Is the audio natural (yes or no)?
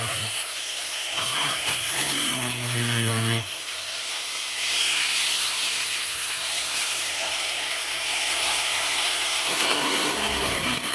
no